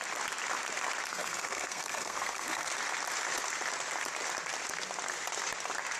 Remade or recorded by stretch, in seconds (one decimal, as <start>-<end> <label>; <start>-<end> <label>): 0.0-1.1 recorded; 1.1-2.7 remade; 2.7-6.0 recorded